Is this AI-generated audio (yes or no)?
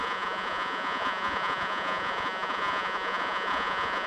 yes